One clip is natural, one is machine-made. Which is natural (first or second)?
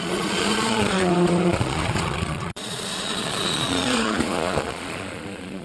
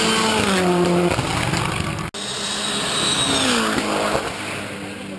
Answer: second